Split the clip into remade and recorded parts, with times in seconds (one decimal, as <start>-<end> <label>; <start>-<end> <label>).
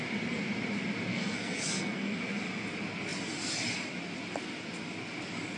0.0-1.1 recorded; 1.1-2.2 remade; 2.2-5.6 recorded